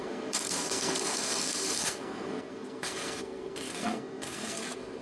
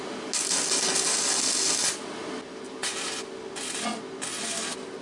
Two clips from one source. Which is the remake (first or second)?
first